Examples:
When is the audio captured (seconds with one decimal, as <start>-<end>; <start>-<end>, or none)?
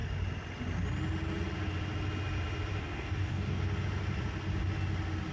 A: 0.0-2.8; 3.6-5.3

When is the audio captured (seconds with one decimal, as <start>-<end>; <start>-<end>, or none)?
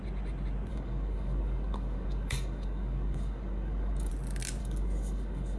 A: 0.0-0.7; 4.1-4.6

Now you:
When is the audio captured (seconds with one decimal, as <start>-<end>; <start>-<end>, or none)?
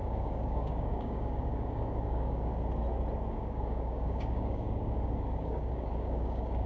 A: 2.5-3.3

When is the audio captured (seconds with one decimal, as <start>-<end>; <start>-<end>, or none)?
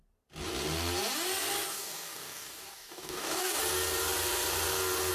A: 0.0-1.7; 3.6-5.1